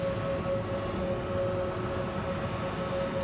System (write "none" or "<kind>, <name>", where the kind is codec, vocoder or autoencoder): none